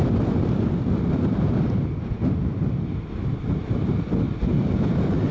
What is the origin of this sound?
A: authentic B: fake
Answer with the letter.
A